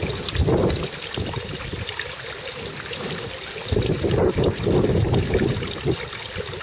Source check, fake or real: real